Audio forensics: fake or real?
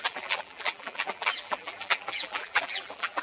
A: fake